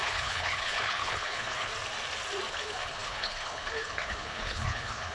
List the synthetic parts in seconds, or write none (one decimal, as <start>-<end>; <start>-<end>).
0.0-1.7; 2.5-5.1